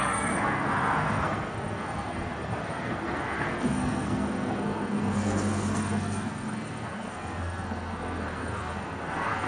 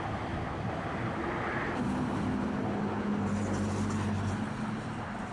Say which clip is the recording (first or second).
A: second